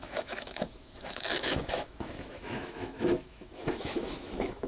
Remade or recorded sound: remade